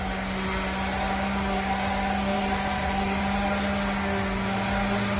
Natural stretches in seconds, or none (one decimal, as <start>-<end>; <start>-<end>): 0.0-2.3; 3.2-5.2